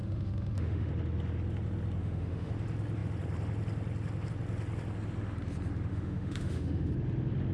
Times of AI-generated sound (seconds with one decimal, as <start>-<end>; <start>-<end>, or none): 0.0-0.9; 2.0-2.5; 5.9-6.9